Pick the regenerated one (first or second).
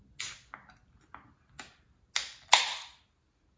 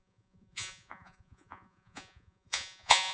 second